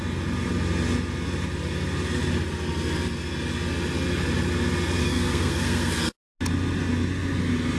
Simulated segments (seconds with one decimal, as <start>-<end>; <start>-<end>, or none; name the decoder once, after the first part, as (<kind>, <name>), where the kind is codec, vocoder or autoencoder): 5.0-5.9 (codec, SNAC)